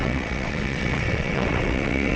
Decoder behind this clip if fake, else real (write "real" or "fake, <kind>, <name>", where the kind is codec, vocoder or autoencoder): fake, vocoder, WaveNeXt